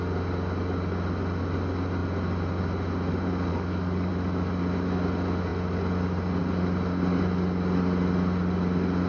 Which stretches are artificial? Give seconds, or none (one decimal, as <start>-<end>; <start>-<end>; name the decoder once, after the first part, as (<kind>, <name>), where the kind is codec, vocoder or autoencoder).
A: 3.5-4.1 (codec, DAC)